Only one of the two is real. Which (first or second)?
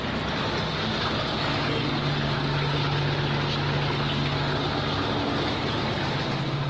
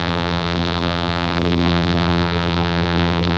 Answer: first